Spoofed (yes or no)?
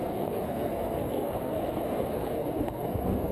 yes